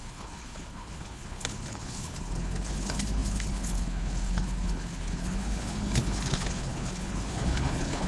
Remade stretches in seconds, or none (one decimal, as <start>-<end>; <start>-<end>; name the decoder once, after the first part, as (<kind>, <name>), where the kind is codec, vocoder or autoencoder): 0.0-8.1 (codec, HILCodec)